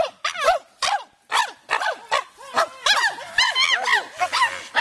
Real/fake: real